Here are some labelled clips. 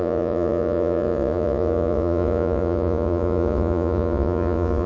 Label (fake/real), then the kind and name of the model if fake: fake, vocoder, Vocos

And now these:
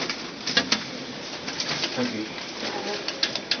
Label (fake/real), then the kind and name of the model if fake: real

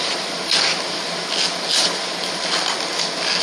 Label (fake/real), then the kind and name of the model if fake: real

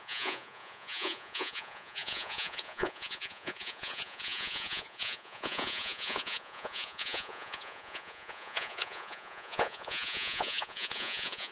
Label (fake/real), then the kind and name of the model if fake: fake, vocoder, Vocos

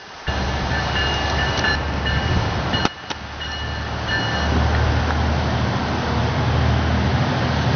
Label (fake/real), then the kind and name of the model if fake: real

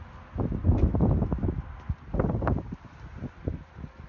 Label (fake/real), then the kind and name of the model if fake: real